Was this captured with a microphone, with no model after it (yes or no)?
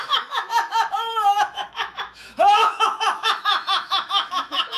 no